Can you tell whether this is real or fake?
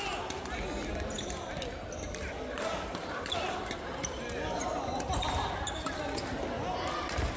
real